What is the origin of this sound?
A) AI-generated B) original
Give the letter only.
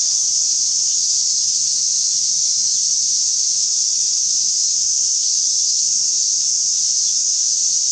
A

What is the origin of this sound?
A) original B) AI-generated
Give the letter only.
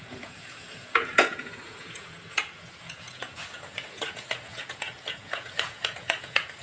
B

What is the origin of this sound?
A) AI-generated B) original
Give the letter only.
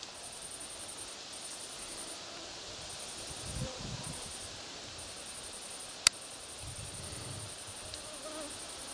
B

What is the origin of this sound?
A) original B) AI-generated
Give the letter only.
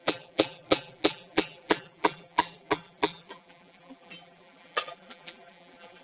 B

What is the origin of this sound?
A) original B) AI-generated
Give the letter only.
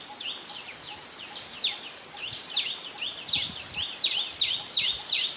A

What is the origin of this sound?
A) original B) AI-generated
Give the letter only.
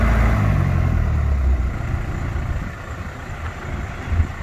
A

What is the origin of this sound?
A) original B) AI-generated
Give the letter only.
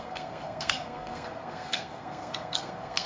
B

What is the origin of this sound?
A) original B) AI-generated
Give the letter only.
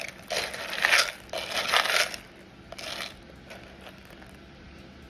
A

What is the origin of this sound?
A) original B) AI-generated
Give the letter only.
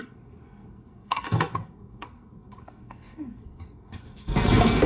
B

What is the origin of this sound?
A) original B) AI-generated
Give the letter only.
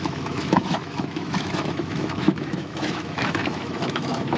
B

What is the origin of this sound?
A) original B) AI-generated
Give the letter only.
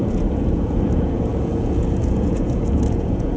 B